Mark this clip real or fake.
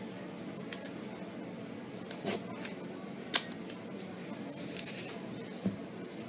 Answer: real